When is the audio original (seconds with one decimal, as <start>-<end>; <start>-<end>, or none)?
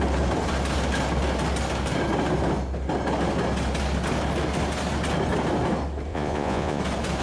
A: 0.0-6.1; 6.8-7.2